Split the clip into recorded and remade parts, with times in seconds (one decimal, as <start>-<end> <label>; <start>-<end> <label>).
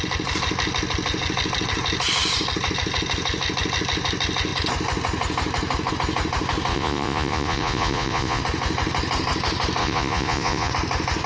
0.0-6.7 recorded; 6.7-8.4 remade; 8.4-9.8 recorded; 9.8-10.7 remade; 10.7-11.3 recorded